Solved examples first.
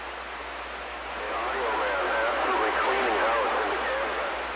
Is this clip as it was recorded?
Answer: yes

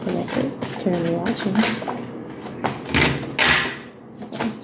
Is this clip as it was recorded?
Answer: yes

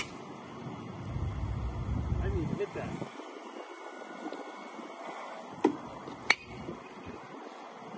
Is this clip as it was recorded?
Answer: yes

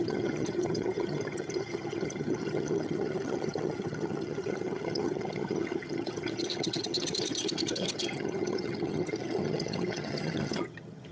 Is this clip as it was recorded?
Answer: no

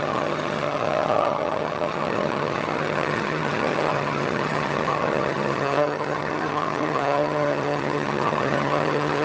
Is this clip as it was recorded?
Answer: no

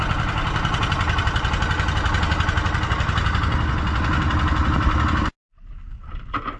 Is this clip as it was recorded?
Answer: yes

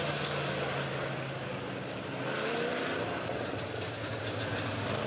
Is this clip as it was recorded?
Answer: yes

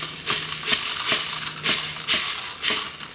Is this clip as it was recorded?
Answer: yes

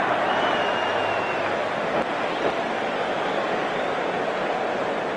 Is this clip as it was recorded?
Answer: yes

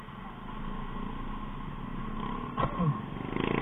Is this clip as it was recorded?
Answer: yes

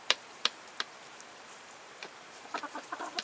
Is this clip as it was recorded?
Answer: no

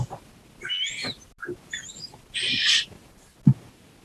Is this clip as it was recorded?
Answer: yes